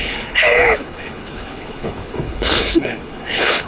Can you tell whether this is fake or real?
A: fake